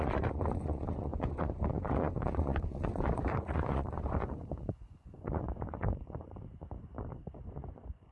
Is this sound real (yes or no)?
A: no